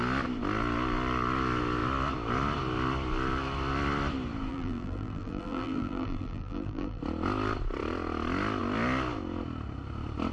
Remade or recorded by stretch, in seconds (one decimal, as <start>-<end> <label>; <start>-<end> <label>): 0.0-4.5 recorded; 4.5-7.0 remade; 7.0-10.3 recorded